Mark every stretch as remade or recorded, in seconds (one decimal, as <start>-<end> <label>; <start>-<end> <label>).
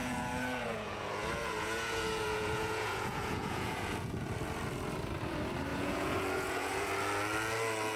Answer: 0.0-4.3 remade; 4.3-5.7 recorded; 5.7-6.9 remade; 6.9-8.0 recorded